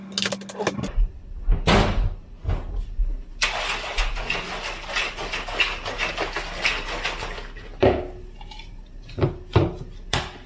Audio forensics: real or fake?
real